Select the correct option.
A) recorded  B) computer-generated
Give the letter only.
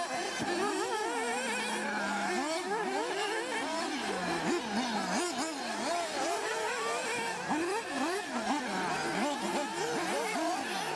A